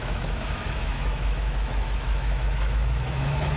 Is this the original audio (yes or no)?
no